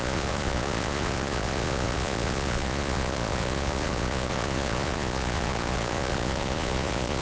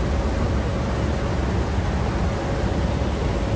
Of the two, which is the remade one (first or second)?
first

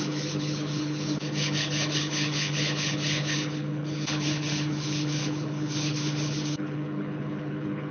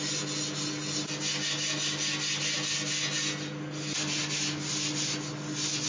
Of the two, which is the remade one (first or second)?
first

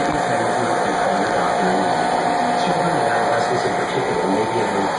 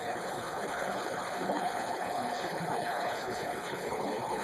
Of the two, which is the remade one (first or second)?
second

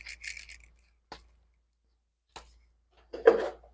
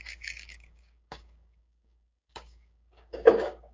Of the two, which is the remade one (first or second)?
second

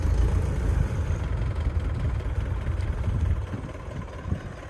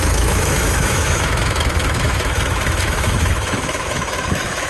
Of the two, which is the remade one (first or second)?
second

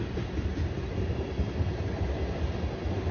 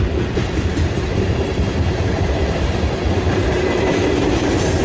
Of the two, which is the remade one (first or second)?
second